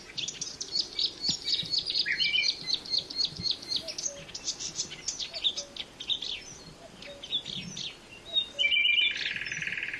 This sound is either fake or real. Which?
real